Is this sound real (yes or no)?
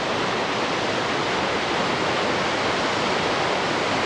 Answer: yes